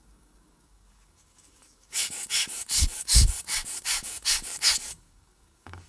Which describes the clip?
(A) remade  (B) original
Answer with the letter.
A